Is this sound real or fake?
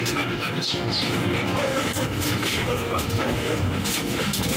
fake